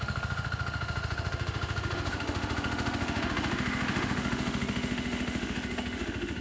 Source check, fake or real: fake